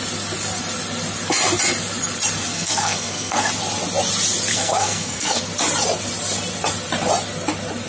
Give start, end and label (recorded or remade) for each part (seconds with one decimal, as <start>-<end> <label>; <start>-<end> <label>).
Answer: 0.0-2.5 recorded; 2.5-3.5 remade; 3.5-4.5 recorded; 4.5-5.4 remade; 5.4-7.9 recorded